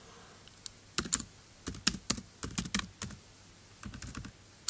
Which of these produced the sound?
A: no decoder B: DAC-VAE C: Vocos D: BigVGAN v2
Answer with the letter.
A